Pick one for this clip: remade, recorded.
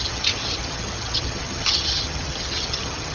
remade